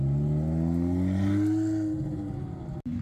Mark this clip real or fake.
real